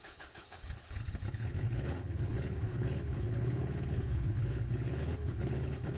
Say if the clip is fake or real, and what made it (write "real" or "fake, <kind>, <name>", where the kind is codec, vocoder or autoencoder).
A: fake, codec, HILCodec